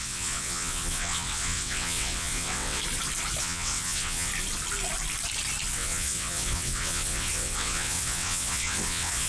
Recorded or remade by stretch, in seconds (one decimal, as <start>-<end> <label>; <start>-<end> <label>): 0.0-2.8 remade; 2.8-3.4 recorded; 3.4-4.3 remade; 4.3-5.7 recorded; 5.7-9.3 remade